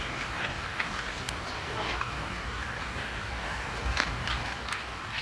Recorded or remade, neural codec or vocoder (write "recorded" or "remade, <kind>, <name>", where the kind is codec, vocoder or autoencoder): remade, codec, DAC